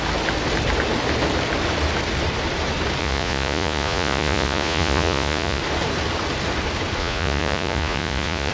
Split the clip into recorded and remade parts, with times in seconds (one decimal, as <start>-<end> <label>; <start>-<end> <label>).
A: 0.0-3.0 recorded; 3.0-5.6 remade; 5.6-7.0 recorded; 7.0-8.5 remade